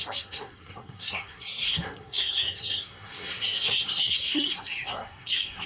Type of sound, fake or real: fake